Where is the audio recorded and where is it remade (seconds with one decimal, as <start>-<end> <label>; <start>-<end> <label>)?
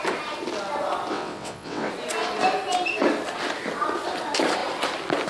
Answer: 0.0-1.1 recorded; 1.1-1.9 remade; 1.9-5.3 recorded